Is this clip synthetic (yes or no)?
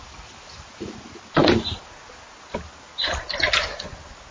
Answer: no